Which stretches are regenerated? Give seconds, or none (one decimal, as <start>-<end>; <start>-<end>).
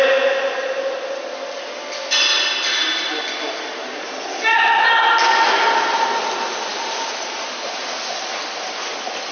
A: none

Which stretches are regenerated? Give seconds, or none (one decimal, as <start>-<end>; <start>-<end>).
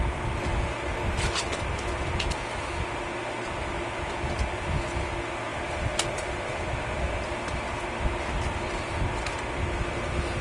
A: none